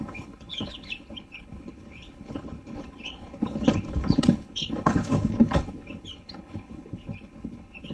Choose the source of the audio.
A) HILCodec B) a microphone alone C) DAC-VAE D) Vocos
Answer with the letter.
A